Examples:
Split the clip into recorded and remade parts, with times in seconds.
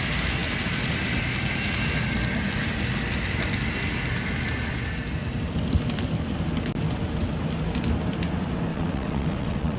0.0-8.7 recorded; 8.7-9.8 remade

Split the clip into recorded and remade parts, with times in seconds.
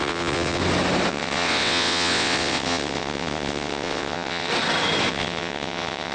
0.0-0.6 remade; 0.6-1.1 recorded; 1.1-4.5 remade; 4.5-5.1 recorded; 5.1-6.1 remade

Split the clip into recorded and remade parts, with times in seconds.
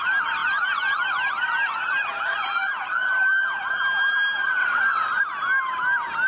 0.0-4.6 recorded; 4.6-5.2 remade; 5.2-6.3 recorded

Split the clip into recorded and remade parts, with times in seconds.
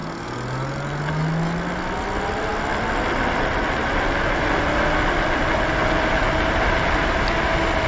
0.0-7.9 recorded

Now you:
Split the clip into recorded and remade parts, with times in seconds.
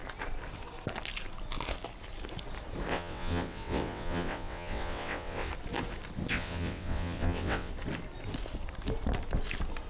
0.0-2.9 recorded; 2.9-5.5 remade; 5.5-6.3 recorded; 6.3-7.7 remade; 7.7-9.9 recorded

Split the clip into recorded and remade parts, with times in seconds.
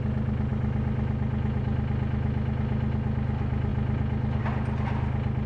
0.0-5.5 recorded